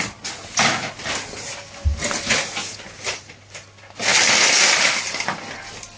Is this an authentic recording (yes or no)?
yes